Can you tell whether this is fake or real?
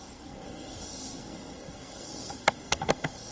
fake